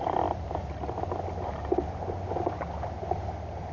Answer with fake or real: real